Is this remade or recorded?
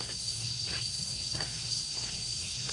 remade